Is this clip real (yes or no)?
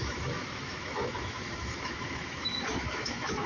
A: no